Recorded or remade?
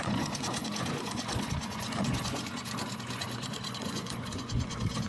remade